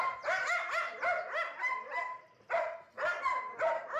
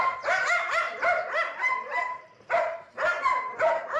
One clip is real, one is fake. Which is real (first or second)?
first